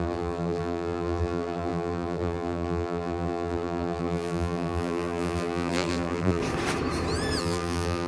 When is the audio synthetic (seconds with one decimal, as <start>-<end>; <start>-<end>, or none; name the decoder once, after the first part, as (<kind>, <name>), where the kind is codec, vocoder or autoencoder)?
0.0-6.4 (vocoder, BigVGAN v2); 7.4-8.1